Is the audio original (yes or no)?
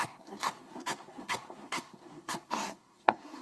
no